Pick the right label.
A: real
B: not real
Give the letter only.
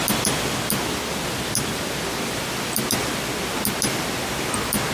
A